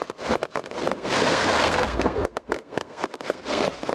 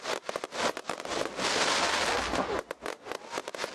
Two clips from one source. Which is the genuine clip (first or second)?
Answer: second